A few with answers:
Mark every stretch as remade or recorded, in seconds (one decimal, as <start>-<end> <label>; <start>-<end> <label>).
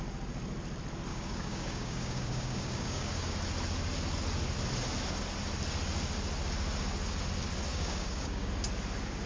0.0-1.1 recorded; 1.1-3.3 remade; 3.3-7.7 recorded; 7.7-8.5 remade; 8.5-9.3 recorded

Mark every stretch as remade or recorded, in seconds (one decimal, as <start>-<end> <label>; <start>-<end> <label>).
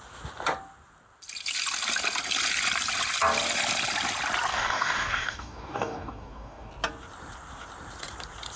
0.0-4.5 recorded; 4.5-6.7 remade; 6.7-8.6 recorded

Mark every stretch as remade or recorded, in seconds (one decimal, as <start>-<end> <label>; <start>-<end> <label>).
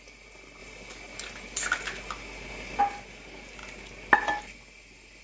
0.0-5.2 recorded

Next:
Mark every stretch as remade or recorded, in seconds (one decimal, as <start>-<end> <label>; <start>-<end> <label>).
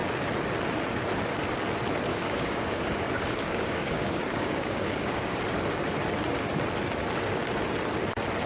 0.0-2.1 recorded; 2.1-5.4 remade; 5.4-8.5 recorded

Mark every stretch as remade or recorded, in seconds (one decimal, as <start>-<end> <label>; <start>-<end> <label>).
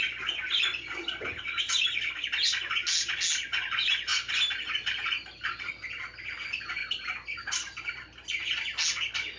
0.0-9.4 recorded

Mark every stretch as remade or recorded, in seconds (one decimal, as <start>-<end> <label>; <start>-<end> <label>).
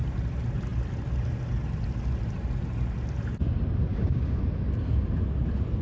0.0-3.9 recorded; 3.9-4.4 remade; 4.4-5.8 recorded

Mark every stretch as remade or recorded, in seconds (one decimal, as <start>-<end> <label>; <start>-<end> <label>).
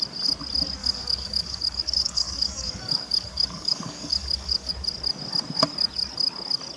0.0-0.8 recorded; 0.8-4.7 remade; 4.7-6.8 recorded